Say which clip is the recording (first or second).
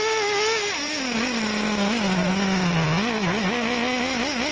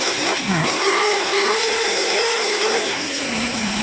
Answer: first